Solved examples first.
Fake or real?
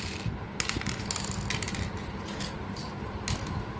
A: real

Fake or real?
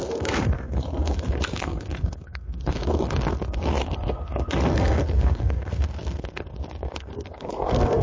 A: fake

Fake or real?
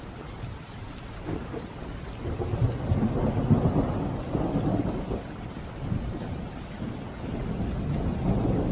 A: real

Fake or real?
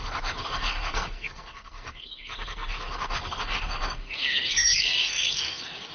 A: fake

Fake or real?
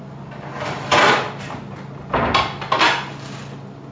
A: real